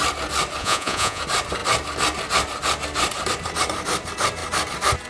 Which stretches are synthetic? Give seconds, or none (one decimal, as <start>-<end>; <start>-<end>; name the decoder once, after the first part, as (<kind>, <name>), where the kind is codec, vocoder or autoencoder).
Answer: 0.6-1.2 (vocoder, Vocos)